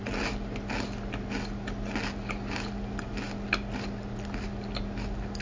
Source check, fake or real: real